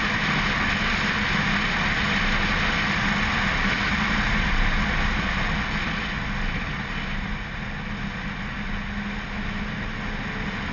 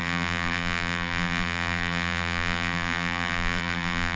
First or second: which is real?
first